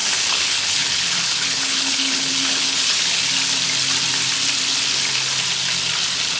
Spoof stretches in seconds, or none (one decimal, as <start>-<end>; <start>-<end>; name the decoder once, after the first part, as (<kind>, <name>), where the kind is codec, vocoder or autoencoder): 0.0-3.2 (codec, HILCodec)